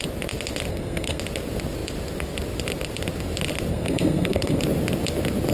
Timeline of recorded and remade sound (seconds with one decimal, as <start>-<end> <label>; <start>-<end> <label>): 0.0-0.7 recorded; 0.7-1.2 remade; 1.2-3.7 recorded; 3.7-4.6 remade; 4.6-5.5 recorded